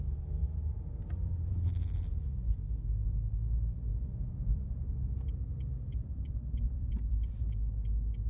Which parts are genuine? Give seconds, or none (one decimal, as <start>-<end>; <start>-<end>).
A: 0.0-0.4; 1.5-3.9; 7.3-8.3